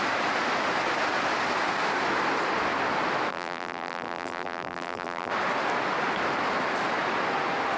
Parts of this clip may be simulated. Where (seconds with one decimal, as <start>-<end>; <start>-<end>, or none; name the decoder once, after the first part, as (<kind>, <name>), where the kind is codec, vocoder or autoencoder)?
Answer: 3.3-5.3 (vocoder, BigVGAN v2)